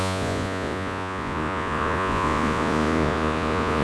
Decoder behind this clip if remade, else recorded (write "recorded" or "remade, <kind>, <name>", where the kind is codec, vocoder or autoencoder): remade, vocoder, Vocos